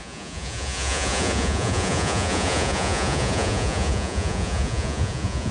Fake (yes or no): yes